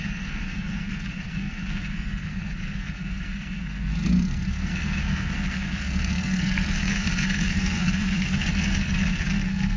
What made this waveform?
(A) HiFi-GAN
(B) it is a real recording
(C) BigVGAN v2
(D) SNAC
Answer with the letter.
D